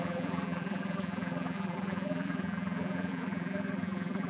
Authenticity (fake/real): fake